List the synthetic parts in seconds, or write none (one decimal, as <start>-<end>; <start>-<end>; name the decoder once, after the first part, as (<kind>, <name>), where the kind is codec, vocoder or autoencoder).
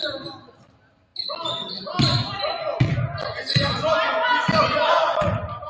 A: none